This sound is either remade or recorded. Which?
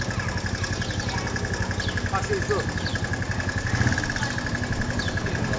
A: recorded